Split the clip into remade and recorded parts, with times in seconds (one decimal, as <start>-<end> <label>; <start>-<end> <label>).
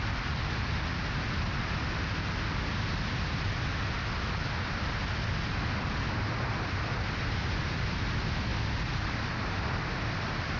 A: 0.0-10.6 recorded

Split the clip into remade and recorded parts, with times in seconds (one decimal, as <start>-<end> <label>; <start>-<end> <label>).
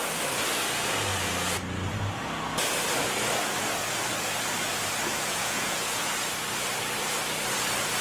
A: 0.0-5.4 recorded; 5.4-6.0 remade; 6.0-8.0 recorded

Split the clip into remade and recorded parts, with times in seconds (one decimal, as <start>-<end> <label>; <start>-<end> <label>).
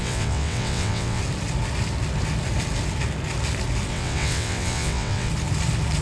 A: 0.0-1.2 remade; 1.2-3.9 recorded; 3.9-5.3 remade; 5.3-6.0 recorded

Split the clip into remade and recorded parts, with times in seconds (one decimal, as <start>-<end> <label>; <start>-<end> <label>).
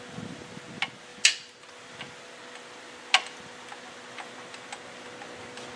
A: 0.0-5.8 recorded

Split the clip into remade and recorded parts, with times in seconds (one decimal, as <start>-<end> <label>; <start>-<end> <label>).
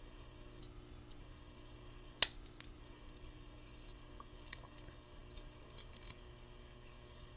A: 0.0-0.6 remade; 0.6-1.2 recorded; 1.2-2.2 remade; 2.2-2.8 recorded; 2.8-7.4 remade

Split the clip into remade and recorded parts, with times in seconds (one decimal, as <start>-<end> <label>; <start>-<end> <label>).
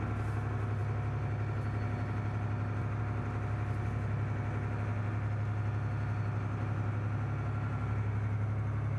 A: 0.0-9.0 recorded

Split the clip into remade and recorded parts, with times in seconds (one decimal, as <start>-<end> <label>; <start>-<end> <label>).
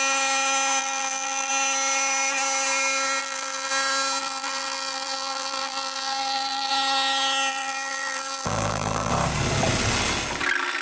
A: 0.0-0.8 recorded; 0.8-1.5 remade; 1.5-3.2 recorded; 3.2-3.7 remade; 3.7-4.2 recorded; 4.2-6.7 remade; 6.7-7.5 recorded; 7.5-9.1 remade; 9.1-10.8 recorded